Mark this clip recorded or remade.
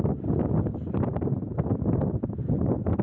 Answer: recorded